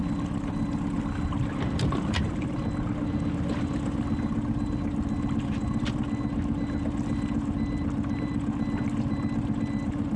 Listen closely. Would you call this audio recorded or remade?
recorded